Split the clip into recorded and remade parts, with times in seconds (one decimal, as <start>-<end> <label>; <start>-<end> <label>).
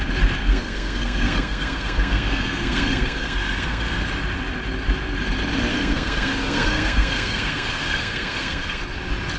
0.0-0.4 recorded; 0.4-4.0 remade; 4.0-5.7 recorded; 5.7-8.8 remade; 8.8-9.4 recorded